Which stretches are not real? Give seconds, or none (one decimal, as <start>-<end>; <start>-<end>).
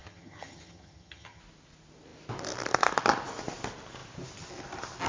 0.0-1.4